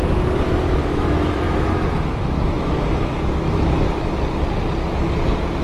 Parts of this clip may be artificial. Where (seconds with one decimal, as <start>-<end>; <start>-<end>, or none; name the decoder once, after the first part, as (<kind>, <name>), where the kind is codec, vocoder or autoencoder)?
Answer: 0.8-4.2 (autoencoder, DAC-VAE)